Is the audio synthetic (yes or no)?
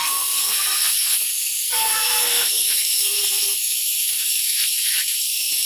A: yes